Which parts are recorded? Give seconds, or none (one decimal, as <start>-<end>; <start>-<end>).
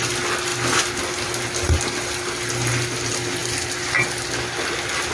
0.0-5.1